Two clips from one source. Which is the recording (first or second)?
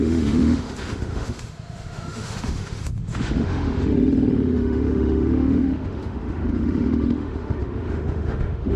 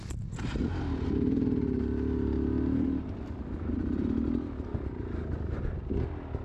second